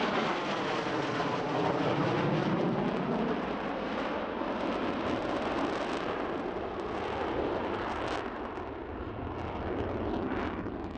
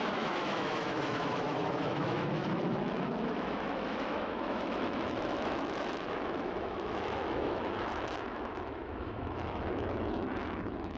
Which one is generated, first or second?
second